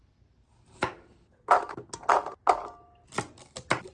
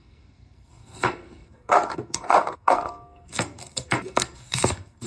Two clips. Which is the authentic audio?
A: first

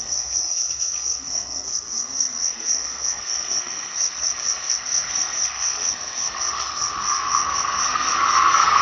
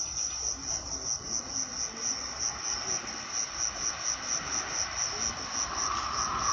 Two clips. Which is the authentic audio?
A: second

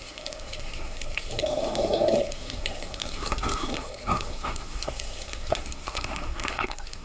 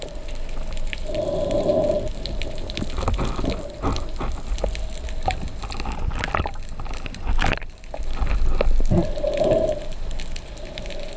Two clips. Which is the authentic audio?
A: second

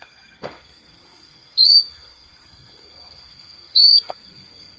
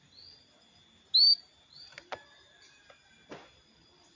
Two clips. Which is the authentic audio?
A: second